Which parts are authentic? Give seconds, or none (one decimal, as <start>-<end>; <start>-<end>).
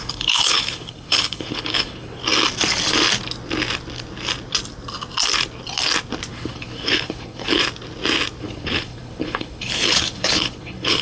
2.2-6.3; 7.6-8.4